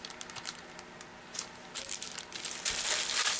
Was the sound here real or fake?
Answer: real